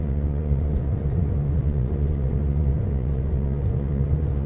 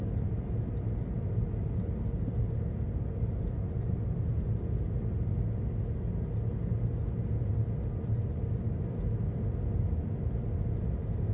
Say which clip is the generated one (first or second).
first